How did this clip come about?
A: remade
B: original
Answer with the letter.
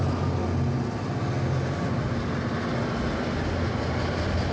B